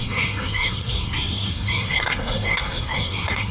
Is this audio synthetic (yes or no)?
yes